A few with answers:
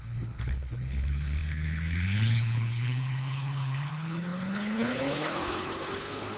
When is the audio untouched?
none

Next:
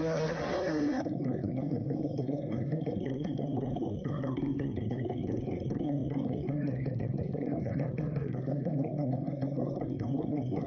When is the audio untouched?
none

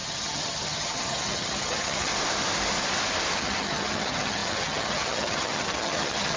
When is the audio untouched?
2.1-3.4

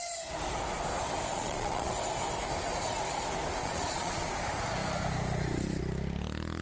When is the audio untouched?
0.0-1.3; 1.9-3.6; 4.3-6.6

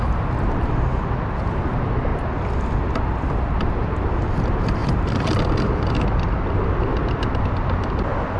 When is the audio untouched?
0.0-8.4

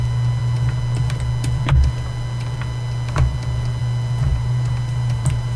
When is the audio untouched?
0.0-4.3